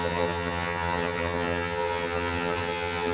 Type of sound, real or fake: fake